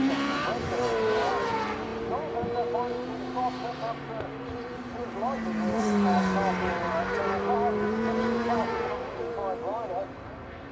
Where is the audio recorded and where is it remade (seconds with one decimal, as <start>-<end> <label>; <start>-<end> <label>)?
0.0-10.7 recorded